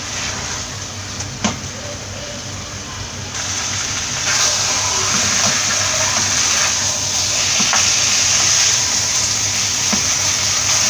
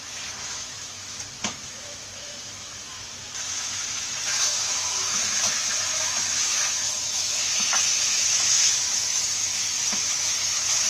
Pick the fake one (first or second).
second